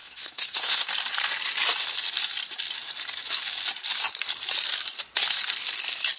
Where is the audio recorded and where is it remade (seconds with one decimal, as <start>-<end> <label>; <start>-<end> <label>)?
0.0-0.9 remade; 0.9-6.2 recorded